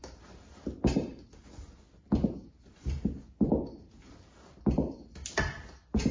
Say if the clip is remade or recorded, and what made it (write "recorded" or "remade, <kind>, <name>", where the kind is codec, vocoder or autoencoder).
recorded